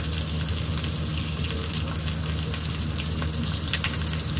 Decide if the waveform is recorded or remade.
recorded